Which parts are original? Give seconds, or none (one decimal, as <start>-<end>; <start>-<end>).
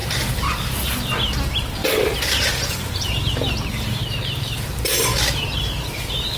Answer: 0.0-1.8; 3.3-6.4